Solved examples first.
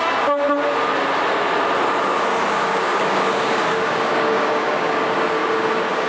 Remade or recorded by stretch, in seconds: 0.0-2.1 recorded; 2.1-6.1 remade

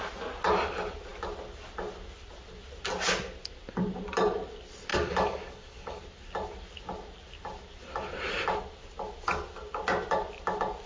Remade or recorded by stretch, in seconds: 0.0-4.9 recorded; 4.9-6.0 remade; 6.0-10.9 recorded